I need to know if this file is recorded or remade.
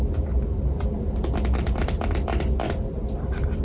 recorded